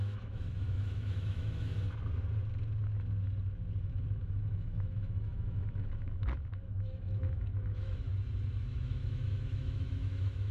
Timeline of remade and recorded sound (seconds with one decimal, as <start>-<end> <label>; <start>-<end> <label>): 0.0-1.7 remade; 1.7-3.8 recorded; 3.8-8.1 remade; 8.1-8.6 recorded; 8.6-10.5 remade